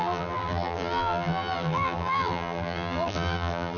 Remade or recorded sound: remade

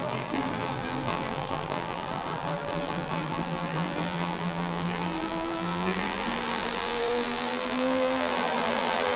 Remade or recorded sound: remade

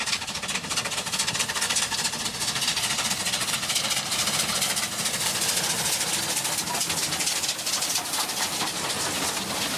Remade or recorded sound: recorded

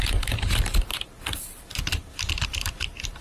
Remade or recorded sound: remade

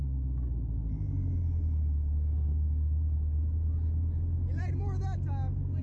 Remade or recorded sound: recorded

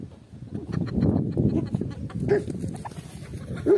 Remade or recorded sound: recorded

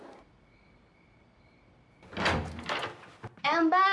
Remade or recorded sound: recorded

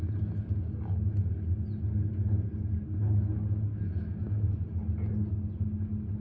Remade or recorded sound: recorded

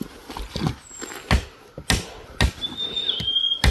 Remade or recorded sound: recorded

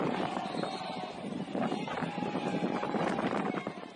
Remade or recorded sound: remade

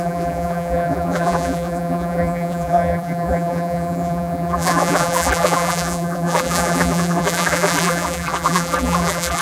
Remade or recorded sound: remade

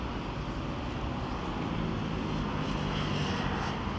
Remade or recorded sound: recorded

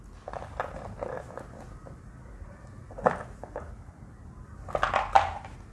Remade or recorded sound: recorded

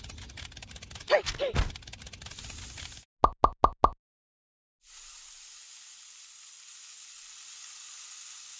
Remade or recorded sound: recorded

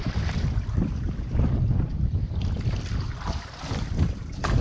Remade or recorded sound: remade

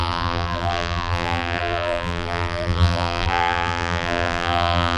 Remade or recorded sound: remade